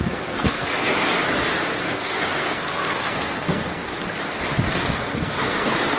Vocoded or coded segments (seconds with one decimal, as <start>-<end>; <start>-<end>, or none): 0.0-0.9; 1.8-3.8; 4.7-6.0